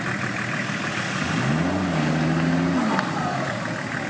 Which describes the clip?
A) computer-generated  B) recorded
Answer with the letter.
B